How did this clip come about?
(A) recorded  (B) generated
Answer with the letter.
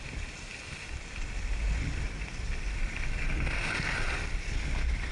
A